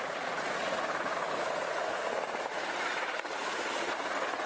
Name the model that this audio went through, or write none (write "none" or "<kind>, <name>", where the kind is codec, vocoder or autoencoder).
vocoder, Vocos